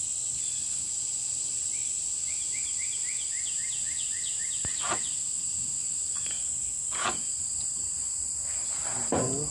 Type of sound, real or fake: real